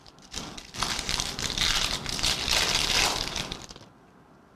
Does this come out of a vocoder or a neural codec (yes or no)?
yes